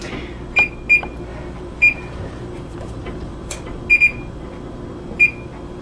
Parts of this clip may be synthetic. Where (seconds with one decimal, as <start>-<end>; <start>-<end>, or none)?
1.3-3.8